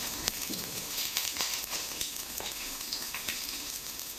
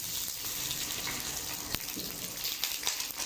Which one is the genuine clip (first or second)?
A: second